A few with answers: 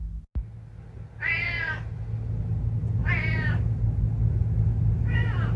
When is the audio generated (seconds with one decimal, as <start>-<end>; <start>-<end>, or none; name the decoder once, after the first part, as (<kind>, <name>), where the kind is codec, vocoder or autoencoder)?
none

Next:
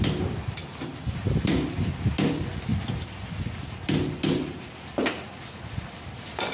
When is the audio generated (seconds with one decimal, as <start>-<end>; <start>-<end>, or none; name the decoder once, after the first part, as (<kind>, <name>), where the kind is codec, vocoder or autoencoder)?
none

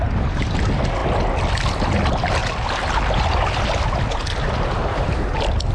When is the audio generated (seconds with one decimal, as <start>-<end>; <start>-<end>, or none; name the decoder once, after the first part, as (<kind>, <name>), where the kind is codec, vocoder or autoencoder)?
none

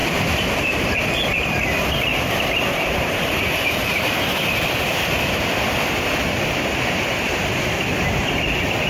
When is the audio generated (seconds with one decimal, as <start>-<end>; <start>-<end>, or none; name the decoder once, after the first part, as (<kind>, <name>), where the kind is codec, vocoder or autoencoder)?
none